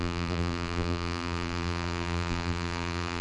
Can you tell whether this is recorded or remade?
remade